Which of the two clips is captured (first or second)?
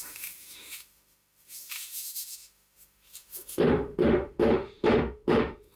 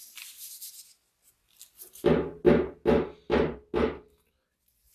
second